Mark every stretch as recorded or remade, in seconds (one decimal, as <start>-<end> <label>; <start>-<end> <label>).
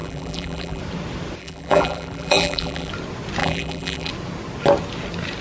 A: 0.0-0.8 remade; 0.8-1.4 recorded; 1.4-2.9 remade; 2.9-3.4 recorded; 3.4-4.1 remade; 4.1-5.4 recorded